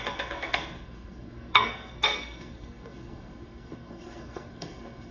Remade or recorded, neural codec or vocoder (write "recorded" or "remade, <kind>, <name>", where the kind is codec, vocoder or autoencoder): remade, codec, SNAC